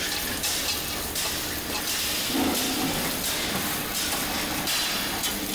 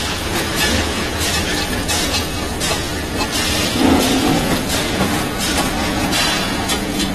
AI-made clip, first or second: second